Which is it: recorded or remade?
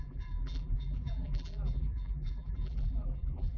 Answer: remade